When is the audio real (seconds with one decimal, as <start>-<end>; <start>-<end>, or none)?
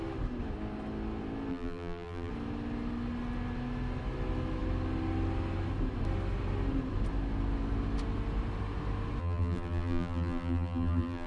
0.0-1.5; 2.3-9.2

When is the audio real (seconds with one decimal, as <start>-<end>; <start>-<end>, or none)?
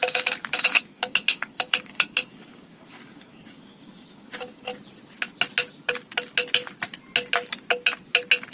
4.7-8.5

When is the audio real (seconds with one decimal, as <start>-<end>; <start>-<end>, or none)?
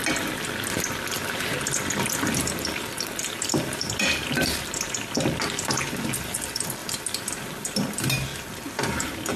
0.0-2.4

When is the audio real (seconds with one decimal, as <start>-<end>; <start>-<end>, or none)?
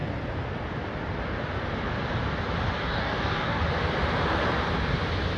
0.0-2.8; 3.6-5.4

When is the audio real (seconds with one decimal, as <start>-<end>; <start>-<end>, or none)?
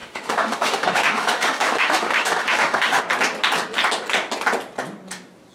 3.0-5.5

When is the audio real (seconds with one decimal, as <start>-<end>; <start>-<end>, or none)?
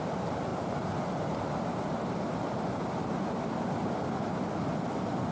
0.0-0.5; 3.7-5.3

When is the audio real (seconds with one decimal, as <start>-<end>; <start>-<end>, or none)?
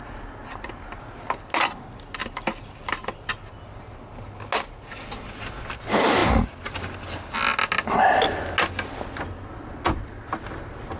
0.0-11.0